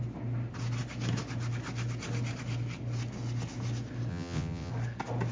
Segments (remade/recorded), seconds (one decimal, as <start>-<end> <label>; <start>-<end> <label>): 0.0-4.1 recorded; 4.1-4.7 remade; 4.7-5.3 recorded